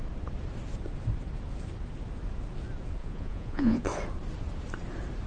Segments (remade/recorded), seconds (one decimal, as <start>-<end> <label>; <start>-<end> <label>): 0.0-3.0 recorded; 3.0-3.8 remade; 3.8-5.3 recorded

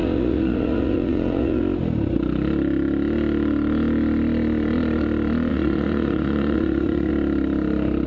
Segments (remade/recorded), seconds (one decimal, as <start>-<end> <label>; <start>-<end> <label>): 0.0-1.6 remade; 1.6-5.5 recorded; 5.5-7.1 remade; 7.1-8.1 recorded

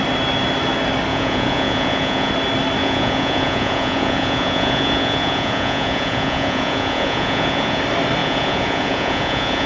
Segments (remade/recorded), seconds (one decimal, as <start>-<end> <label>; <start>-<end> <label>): 0.0-1.1 recorded; 1.1-2.3 remade; 2.3-2.8 recorded; 2.8-7.8 remade; 7.8-8.2 recorded; 8.2-9.7 remade

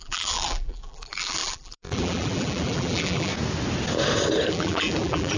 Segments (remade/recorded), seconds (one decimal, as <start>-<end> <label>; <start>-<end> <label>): 0.0-3.3 remade; 3.3-4.5 recorded; 4.5-5.4 remade

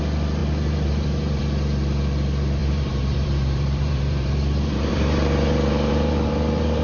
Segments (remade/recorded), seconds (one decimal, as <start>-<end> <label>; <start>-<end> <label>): 0.0-0.4 recorded; 0.4-1.4 remade; 1.4-2.6 recorded; 2.6-6.8 remade

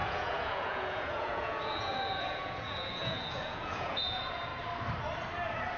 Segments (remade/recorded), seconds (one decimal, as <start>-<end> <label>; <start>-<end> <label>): 0.0-4.5 remade; 4.5-5.8 recorded